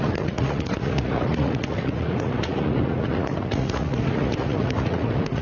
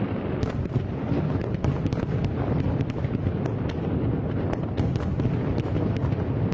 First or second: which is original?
second